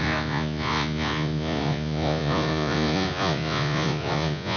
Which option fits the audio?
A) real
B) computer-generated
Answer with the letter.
B